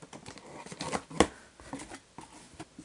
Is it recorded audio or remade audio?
recorded